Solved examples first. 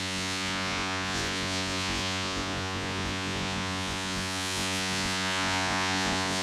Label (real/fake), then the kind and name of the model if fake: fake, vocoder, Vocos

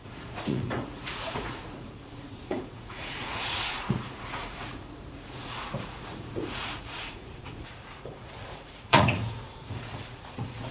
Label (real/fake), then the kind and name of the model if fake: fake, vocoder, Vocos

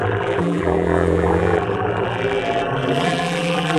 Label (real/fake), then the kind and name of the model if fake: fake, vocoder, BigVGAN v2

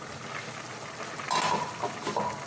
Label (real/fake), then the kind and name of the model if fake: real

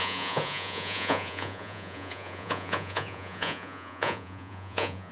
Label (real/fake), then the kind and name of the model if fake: fake, vocoder, Vocos